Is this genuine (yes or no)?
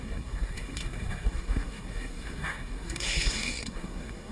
no